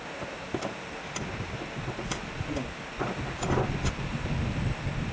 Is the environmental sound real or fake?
real